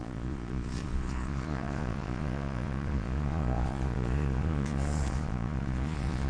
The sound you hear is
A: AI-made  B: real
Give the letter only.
A